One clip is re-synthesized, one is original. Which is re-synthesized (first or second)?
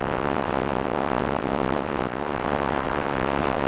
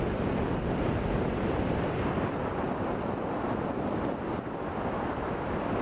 first